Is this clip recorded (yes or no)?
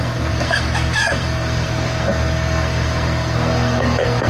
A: no